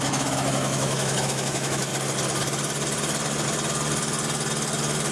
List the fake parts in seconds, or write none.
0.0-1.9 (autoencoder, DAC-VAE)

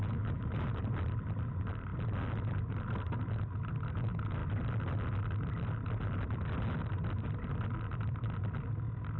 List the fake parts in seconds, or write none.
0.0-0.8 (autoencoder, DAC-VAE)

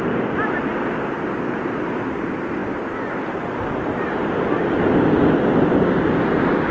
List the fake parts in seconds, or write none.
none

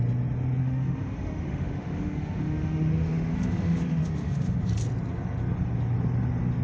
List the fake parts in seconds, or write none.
0.6-4.6 (autoencoder, DAC-VAE)

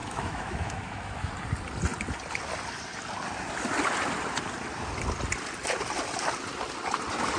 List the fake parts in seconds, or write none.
0.0-1.3 (autoencoder, DAC-VAE)